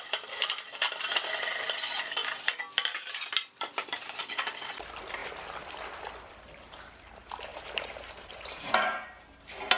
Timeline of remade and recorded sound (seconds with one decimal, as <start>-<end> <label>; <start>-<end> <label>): 0.0-7.5 recorded; 7.5-9.1 remade; 9.1-9.8 recorded